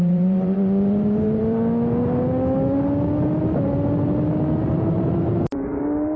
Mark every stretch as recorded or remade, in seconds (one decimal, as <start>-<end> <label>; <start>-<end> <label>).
0.0-1.4 remade; 1.4-4.7 recorded; 4.7-6.2 remade